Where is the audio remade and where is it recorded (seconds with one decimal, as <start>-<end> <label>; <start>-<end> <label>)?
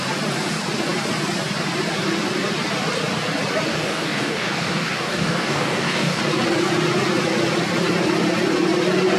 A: 0.0-3.7 recorded; 3.7-6.2 remade; 6.2-9.2 recorded